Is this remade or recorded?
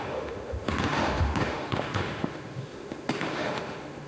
remade